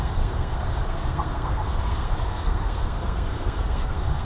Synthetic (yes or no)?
yes